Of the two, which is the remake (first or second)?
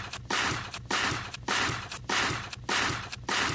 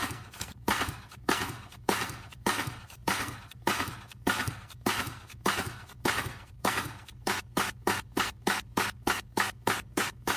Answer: second